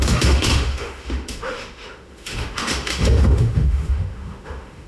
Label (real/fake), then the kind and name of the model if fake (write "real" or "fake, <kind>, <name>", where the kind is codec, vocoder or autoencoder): fake, autoencoder, DAC-VAE